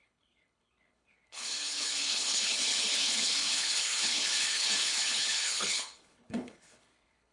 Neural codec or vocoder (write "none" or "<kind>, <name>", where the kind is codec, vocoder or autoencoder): codec, HILCodec